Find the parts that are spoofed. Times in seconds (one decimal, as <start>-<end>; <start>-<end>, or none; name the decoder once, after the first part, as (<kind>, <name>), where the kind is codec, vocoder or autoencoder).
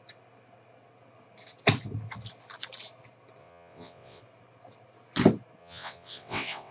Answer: 3.4-4.2 (vocoder, WaveNeXt); 5.6-6.7